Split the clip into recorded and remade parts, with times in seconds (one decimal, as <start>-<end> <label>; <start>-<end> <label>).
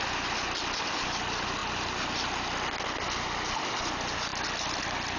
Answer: 0.0-5.2 recorded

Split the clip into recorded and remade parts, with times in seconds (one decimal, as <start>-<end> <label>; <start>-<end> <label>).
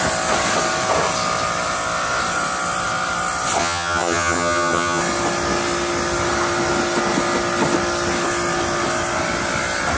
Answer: 0.0-3.6 recorded; 3.6-5.0 remade; 5.0-10.0 recorded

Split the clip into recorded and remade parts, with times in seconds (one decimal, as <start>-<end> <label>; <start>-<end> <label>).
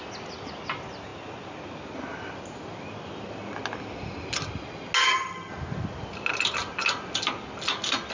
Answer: 0.0-5.0 recorded; 5.0-5.5 remade; 5.5-8.1 recorded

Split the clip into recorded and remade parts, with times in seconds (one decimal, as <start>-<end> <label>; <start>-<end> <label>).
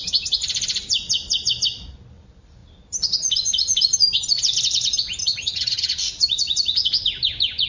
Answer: 0.0-5.2 recorded; 5.2-5.9 remade; 5.9-7.7 recorded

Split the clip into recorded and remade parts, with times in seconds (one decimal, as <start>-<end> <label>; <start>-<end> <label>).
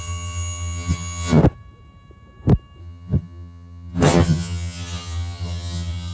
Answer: 0.0-1.4 remade; 1.4-2.8 recorded; 2.8-6.1 remade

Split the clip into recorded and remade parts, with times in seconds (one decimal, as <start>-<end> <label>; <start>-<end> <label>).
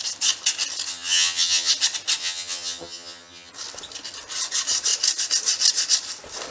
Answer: 0.0-0.9 recorded; 0.9-1.7 remade; 1.7-2.2 recorded; 2.2-3.5 remade; 3.5-6.5 recorded